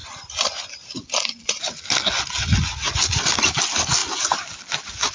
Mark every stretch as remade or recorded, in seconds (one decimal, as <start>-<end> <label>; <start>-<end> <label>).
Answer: 0.0-2.2 remade; 2.2-4.0 recorded; 4.0-5.1 remade